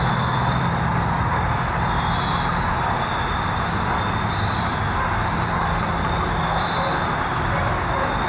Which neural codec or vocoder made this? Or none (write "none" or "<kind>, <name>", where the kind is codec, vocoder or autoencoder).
none